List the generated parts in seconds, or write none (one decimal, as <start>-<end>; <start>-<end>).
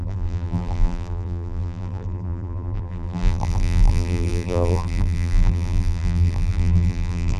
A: 0.0-7.4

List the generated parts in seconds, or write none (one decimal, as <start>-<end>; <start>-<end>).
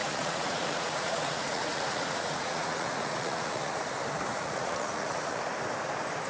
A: 0.0-3.8; 4.3-5.4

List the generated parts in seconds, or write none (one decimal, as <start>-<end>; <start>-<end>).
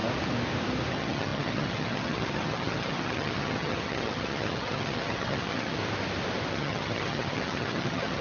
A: 0.9-5.8; 6.5-8.2